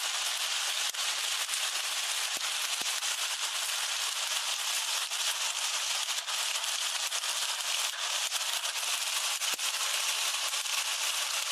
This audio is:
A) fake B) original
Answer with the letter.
B